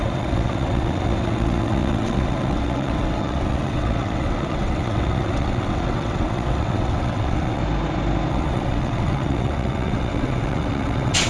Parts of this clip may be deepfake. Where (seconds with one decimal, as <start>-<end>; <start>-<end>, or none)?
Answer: 0.0-7.6; 8.3-11.3